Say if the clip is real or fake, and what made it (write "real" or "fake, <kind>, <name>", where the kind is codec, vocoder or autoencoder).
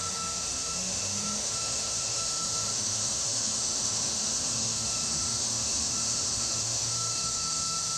fake, autoencoder, DAC-VAE